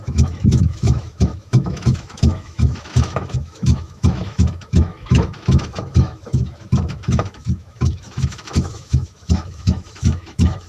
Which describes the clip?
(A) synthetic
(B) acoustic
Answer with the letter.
A